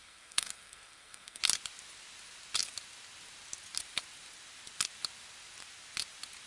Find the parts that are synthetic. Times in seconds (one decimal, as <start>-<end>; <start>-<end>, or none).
0.0-1.4